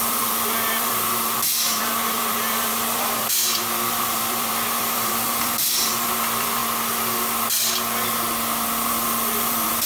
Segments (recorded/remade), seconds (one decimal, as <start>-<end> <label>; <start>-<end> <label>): 0.0-6.6 remade; 6.6-8.9 recorded; 8.9-9.9 remade